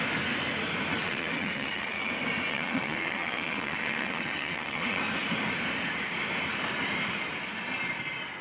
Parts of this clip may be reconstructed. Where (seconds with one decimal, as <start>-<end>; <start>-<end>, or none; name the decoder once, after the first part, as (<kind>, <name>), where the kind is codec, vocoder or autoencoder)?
0.9-2.1 (vocoder, WaveNeXt); 2.5-5.0